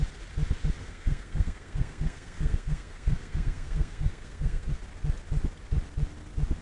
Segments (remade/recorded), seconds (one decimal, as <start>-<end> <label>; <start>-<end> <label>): 0.0-0.8 recorded; 0.8-4.8 remade; 4.8-6.6 recorded